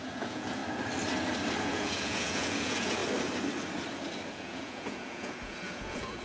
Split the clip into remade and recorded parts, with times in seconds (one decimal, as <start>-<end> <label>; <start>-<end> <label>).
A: 0.0-0.6 remade; 0.6-1.6 recorded; 1.6-3.0 remade; 3.0-4.3 recorded; 4.3-6.2 remade